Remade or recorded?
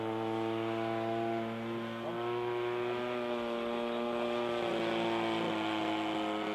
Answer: recorded